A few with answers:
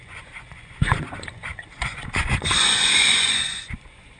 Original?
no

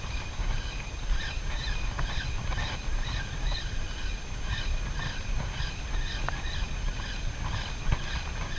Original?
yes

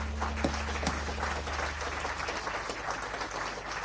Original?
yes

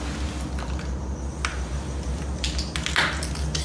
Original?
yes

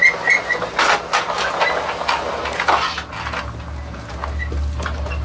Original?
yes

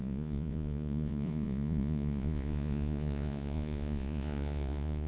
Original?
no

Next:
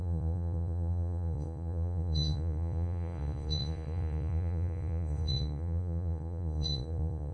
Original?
no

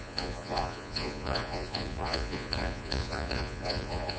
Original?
no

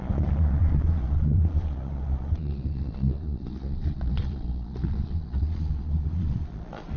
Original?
no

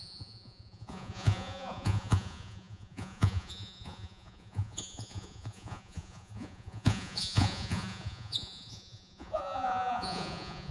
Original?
no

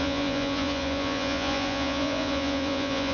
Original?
no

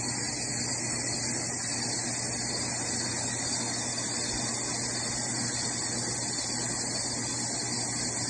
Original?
yes